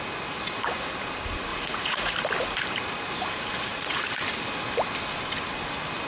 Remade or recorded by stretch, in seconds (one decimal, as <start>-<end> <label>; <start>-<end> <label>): 0.0-1.5 recorded; 1.5-2.1 remade; 2.1-3.7 recorded; 3.7-4.3 remade; 4.3-6.1 recorded